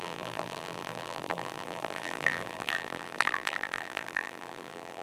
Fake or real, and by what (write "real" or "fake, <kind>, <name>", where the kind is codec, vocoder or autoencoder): fake, vocoder, BigVGAN v2